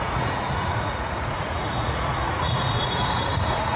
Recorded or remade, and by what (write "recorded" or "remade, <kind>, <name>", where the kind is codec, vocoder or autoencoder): remade, vocoder, Vocos